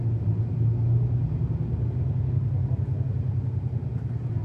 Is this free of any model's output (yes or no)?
yes